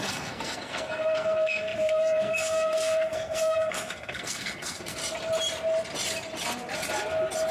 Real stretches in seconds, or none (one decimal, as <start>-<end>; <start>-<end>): 5.0-7.5